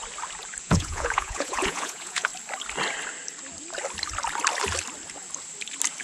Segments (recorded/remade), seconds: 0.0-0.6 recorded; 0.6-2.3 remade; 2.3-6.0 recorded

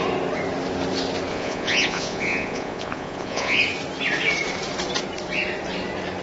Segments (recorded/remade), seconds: 0.0-1.3 recorded; 1.3-3.6 remade; 3.6-6.2 recorded